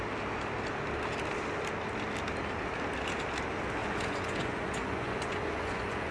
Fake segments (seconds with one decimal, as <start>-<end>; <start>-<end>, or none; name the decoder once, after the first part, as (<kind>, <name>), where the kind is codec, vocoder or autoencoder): 3.8-6.1 (vocoder, Vocos)